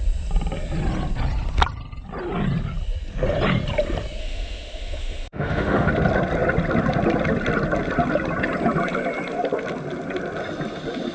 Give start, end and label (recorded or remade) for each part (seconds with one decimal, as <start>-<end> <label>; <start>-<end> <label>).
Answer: 0.0-4.2 recorded; 4.2-5.9 remade; 5.9-11.1 recorded